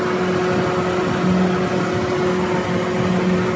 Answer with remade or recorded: recorded